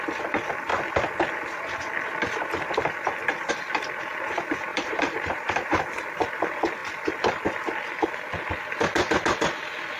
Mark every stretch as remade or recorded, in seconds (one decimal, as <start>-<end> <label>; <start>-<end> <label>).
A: 0.0-4.7 recorded; 4.7-5.8 remade; 5.8-10.0 recorded